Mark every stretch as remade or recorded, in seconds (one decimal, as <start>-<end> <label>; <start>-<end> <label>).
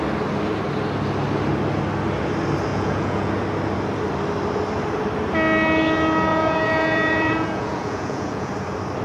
0.0-2.7 recorded; 2.7-3.3 remade; 3.3-6.3 recorded; 6.3-8.5 remade; 8.5-9.0 recorded